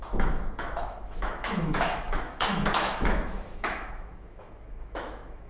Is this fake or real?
fake